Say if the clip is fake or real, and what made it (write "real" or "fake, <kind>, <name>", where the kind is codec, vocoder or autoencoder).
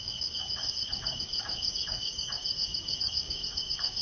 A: fake, codec, DAC